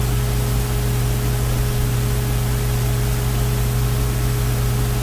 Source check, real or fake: real